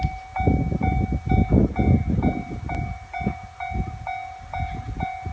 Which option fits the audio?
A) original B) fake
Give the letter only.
A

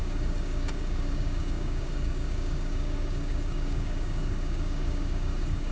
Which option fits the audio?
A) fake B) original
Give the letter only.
A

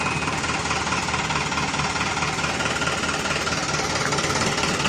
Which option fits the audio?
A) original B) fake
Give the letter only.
A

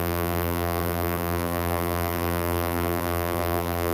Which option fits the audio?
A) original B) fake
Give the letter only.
B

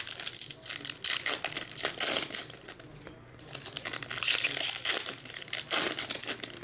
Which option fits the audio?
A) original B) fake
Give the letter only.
A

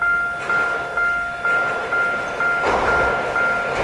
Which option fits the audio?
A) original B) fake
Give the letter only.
A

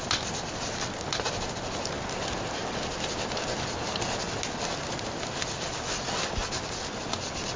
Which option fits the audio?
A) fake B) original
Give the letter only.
B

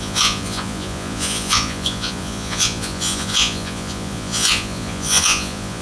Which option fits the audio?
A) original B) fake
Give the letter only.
B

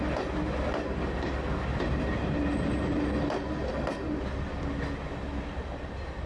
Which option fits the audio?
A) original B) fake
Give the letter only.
A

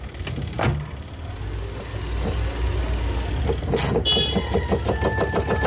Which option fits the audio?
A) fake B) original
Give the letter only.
B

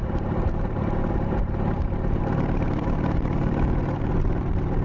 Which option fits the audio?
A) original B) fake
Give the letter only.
B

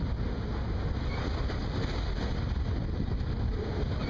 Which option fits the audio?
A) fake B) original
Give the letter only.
B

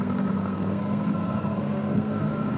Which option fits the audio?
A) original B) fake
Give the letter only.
B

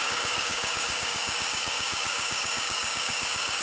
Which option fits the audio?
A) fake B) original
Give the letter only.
A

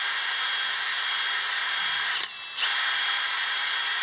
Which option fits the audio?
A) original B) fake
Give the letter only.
A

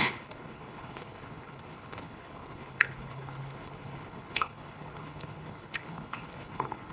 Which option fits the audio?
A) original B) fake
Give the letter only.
B